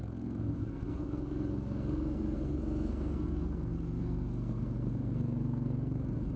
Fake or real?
fake